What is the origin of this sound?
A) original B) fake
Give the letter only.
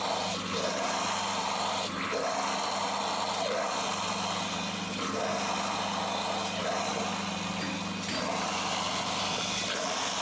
A